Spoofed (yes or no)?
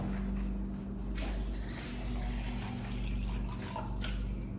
no